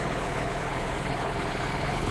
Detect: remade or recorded remade